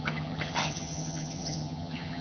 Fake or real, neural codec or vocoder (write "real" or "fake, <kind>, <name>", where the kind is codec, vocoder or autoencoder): fake, vocoder, HiFi-GAN